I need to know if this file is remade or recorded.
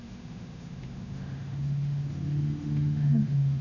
remade